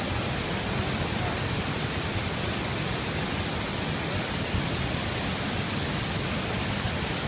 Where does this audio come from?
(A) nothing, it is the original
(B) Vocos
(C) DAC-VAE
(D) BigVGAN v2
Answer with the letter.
A